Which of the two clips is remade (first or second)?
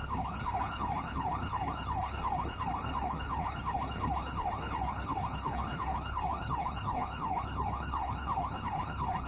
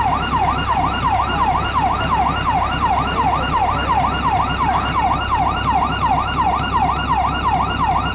first